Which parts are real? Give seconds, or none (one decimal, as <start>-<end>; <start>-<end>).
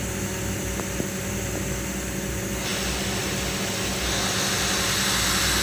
0.0-5.6